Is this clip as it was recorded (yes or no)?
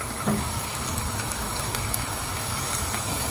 no